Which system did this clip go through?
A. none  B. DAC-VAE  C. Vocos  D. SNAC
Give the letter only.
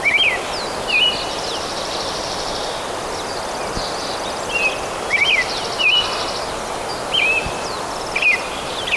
A